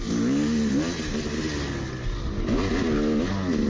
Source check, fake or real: real